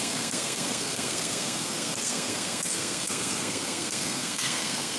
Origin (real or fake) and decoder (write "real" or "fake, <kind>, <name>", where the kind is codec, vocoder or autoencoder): fake, codec, SNAC